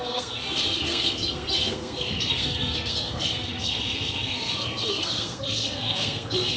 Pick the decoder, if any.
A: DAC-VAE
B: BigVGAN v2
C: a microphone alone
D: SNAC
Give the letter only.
D